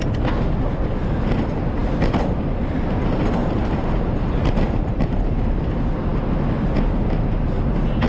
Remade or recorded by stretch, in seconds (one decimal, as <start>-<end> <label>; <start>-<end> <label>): 0.0-3.4 recorded; 3.4-5.6 remade; 5.6-8.1 recorded